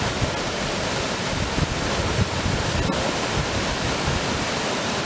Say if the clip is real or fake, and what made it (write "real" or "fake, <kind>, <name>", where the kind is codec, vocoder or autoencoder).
real